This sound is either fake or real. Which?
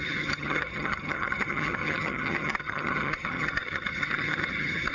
fake